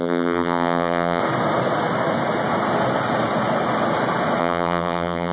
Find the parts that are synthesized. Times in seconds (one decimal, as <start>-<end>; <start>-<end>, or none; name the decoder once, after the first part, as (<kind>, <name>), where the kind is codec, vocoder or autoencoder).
0.0-1.2 (vocoder, BigVGAN v2); 4.4-5.3